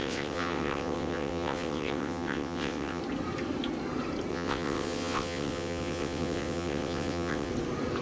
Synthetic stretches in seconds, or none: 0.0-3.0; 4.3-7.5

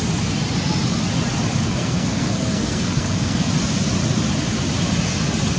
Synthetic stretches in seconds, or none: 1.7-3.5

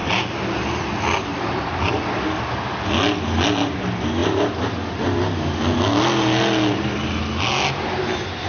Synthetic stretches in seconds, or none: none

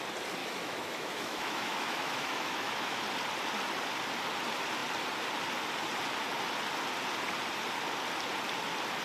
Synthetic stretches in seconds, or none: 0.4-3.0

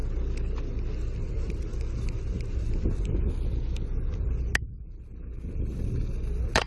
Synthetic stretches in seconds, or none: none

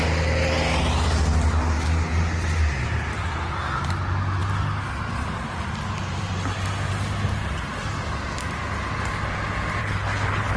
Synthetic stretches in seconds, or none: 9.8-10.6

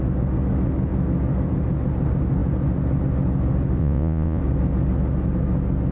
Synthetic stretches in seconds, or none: 3.8-4.4

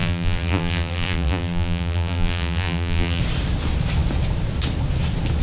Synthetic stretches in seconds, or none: 0.0-3.2